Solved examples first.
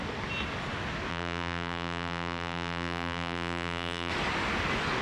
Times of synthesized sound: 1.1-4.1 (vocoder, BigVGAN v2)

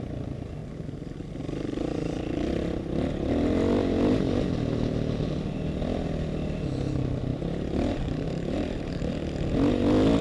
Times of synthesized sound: 0.6-1.3 (vocoder, BigVGAN v2); 7.3-9.1

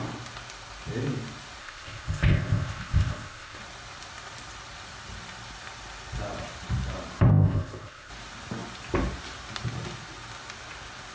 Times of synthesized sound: 1.6-3.6 (codec, ZipCodec); 7.3-8.1

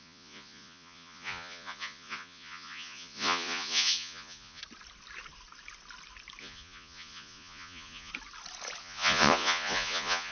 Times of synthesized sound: 0.0-4.6 (vocoder, Vocos); 6.4-8.1; 8.8-10.3

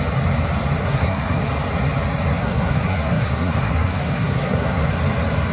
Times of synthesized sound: 0.8-1.4 (codec, SNAC); 2.4-4.9

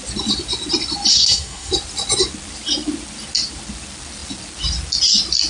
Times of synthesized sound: 1.1-1.7 (codec, SNAC)

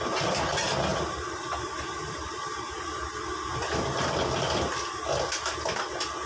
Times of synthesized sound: 0.9-3.0 (vocoder, BigVGAN v2); 3.5-4.1